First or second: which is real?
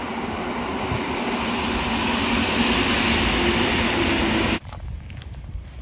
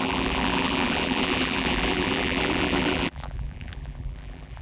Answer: first